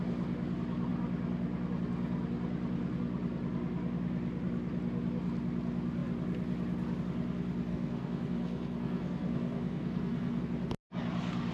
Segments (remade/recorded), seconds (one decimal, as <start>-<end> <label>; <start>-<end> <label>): 0.0-7.7 recorded; 7.7-10.4 remade; 10.4-11.5 recorded